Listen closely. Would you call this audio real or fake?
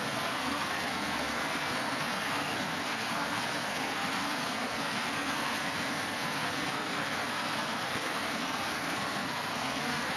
fake